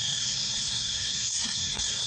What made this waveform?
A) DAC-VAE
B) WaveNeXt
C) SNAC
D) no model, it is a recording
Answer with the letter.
C